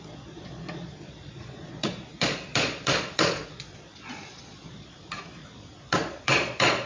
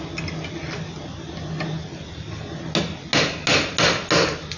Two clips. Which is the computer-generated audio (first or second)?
first